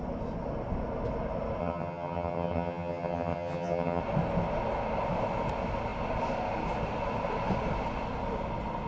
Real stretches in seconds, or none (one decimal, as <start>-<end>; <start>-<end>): 0.0-1.6; 4.0-8.9